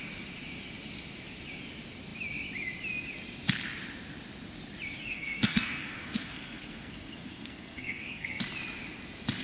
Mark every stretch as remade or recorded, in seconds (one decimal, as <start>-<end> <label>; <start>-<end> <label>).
0.0-5.0 recorded; 5.0-8.4 remade; 8.4-9.4 recorded